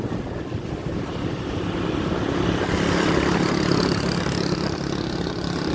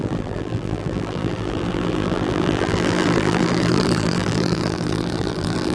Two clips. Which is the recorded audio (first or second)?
first